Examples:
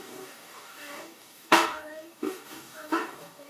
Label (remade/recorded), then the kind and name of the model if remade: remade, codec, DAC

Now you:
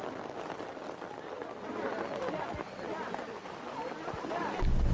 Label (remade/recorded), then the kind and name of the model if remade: recorded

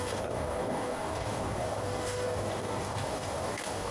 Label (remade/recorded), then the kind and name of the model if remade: remade, codec, DAC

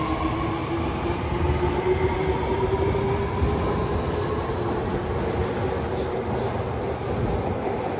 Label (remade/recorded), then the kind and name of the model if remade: recorded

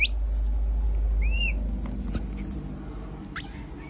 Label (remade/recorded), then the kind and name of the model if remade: recorded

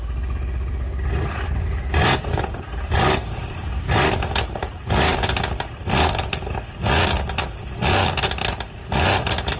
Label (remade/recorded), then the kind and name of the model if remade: remade, vocoder, BigVGAN v2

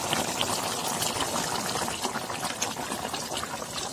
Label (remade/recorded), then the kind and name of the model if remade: recorded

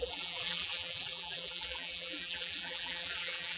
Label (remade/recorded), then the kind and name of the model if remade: remade, vocoder, BigVGAN v2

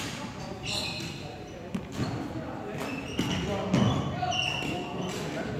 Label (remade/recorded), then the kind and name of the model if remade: recorded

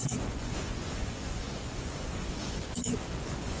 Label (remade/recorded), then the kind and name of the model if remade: remade, vocoder, Vocos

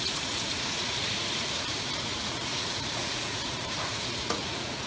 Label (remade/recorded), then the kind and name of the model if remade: remade, vocoder, Vocos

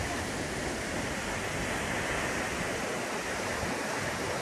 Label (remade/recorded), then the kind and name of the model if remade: recorded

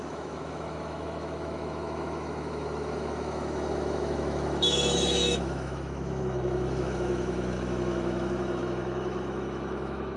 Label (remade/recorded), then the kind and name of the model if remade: remade, autoencoder, DAC-VAE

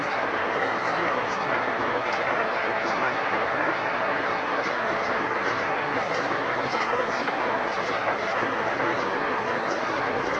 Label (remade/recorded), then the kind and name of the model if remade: remade, codec, SNAC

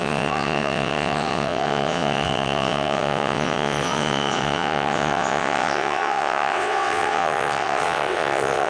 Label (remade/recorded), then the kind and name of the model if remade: remade, vocoder, WaveNeXt